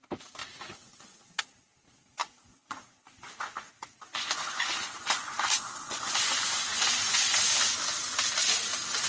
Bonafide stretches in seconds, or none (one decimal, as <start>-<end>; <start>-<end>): 0.0-0.4; 1.3-2.2; 3.5-4.1; 7.4-9.1